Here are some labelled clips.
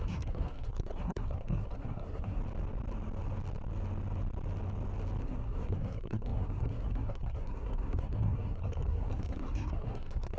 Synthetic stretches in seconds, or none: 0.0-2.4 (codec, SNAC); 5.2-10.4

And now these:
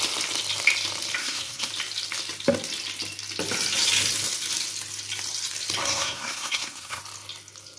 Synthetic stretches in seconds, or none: 1.2-1.7 (codec, SNAC); 5.8-7.0

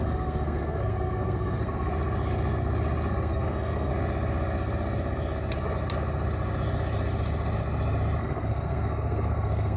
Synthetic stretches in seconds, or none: 0.0-1.9 (codec, SNAC); 3.1-3.9; 8.2-9.8

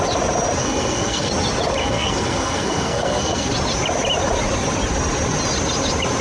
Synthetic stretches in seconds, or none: 0.6-1.3 (codec, SNAC); 1.8-3.5

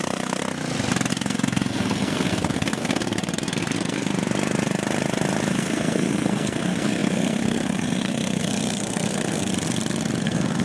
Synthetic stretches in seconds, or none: 0.0-0.4 (codec, SNAC); 1.1-4.1; 5.5-9.5; 10.2-10.6

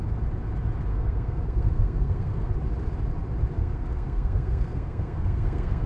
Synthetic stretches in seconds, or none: 0.9-2.5 (codec, SNAC); 3.6-5.9

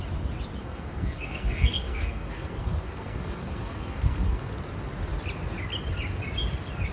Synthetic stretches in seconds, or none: 0.6-4.5 (codec, SNAC)

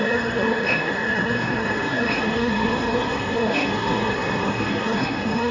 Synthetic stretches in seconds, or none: 0.0-5.5 (codec, SNAC)